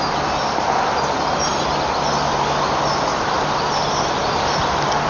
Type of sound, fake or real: real